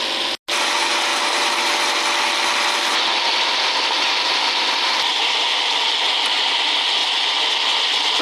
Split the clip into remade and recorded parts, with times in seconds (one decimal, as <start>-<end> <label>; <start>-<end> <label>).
0.0-8.2 recorded